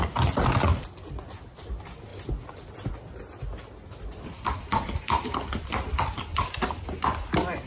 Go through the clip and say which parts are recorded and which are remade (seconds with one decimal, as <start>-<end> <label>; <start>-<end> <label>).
0.0-7.7 recorded